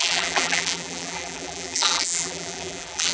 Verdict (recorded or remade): remade